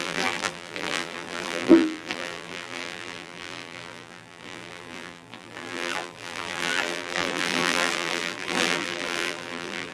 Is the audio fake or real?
fake